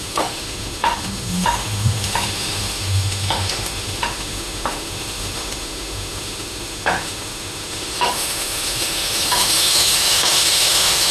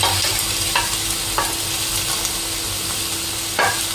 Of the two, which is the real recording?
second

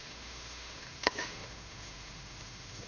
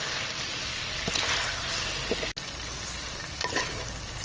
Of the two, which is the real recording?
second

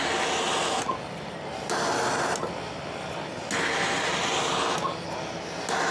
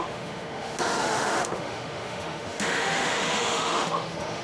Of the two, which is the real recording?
first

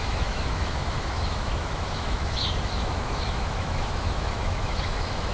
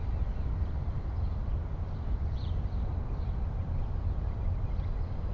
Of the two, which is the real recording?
second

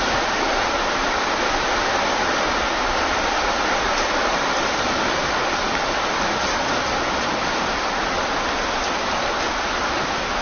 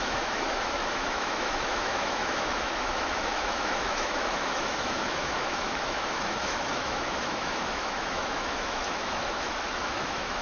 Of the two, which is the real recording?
first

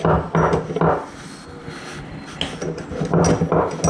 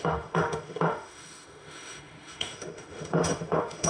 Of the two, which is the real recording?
first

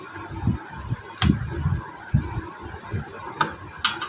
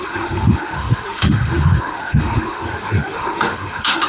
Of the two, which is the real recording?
first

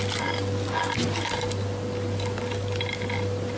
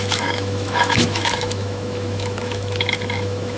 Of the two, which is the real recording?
first